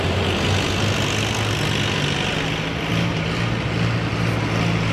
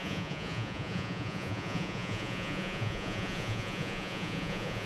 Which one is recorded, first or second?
first